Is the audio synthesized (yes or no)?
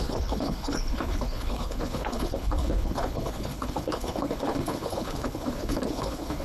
yes